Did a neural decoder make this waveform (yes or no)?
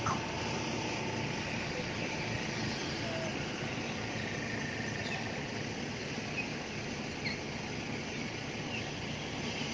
no